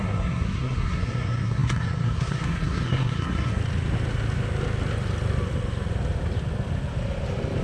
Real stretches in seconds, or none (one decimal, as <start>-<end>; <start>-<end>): 3.6-7.6